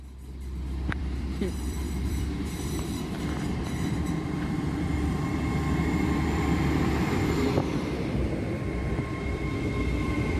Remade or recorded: remade